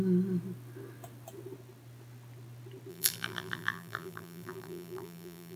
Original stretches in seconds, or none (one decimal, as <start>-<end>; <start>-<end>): 0.0-2.9